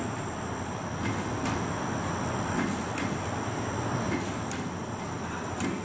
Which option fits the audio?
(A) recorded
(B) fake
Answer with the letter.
A